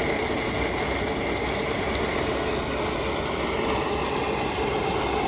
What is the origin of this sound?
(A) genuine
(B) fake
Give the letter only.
A